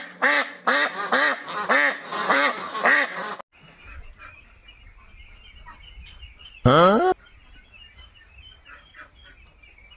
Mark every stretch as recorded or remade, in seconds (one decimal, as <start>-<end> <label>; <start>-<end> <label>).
0.0-2.1 recorded; 2.1-3.3 remade; 3.3-10.0 recorded